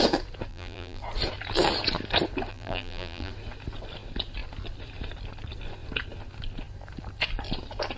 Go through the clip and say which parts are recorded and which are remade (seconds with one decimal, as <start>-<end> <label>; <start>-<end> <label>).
0.0-0.5 recorded; 0.5-1.0 remade; 1.0-2.5 recorded; 2.5-3.3 remade; 3.3-8.0 recorded